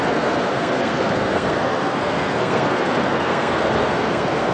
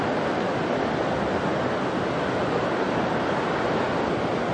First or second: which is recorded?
second